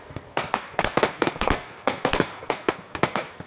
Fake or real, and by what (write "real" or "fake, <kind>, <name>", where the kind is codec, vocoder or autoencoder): fake, codec, SNAC